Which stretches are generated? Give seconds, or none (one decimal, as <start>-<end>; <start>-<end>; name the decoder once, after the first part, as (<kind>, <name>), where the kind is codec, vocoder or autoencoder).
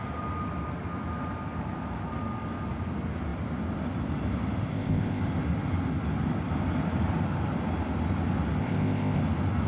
4.7-5.2 (codec, ZipCodec); 8.6-9.2